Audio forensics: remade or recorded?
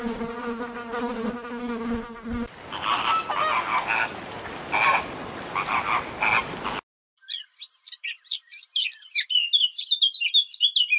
recorded